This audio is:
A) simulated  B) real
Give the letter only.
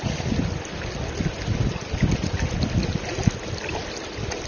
B